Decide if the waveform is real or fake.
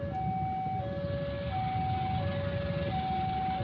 real